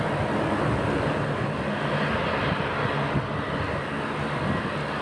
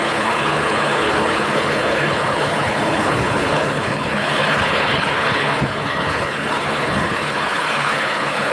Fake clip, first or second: second